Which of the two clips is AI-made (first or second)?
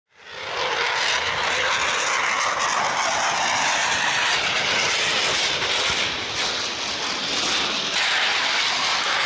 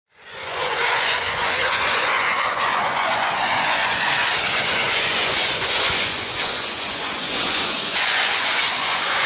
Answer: second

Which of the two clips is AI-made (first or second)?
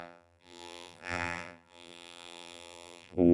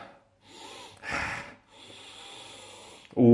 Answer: first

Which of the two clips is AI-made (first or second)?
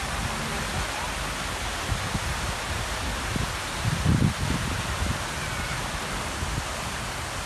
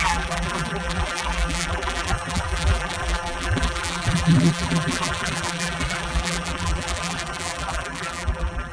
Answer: second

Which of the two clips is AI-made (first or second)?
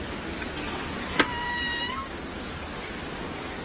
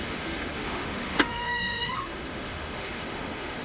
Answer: second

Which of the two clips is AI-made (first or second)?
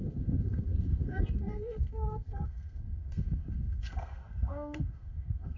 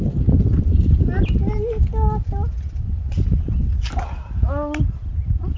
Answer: first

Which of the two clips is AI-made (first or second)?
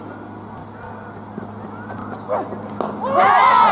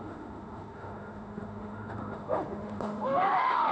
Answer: second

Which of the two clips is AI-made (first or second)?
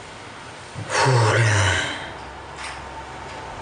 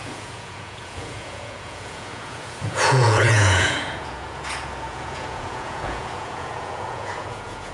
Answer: second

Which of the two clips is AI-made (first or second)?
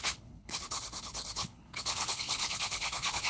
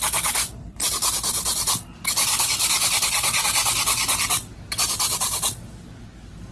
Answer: first